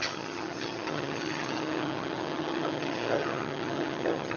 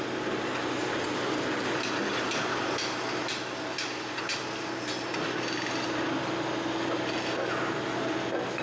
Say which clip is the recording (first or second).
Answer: second